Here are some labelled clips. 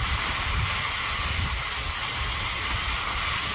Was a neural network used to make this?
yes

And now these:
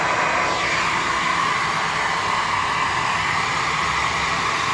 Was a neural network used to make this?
no